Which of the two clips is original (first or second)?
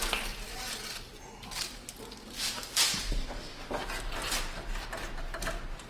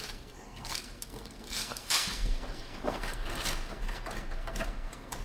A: first